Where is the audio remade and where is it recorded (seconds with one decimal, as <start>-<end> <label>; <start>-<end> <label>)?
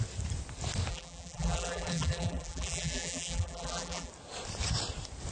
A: 0.0-0.9 recorded; 0.9-4.1 remade; 4.1-5.3 recorded